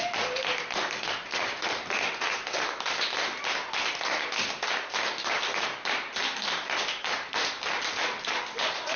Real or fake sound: real